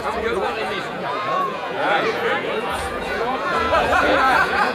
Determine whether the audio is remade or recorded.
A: remade